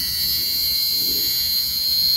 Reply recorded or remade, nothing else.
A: remade